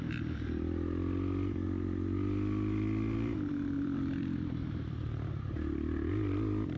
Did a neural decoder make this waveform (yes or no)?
yes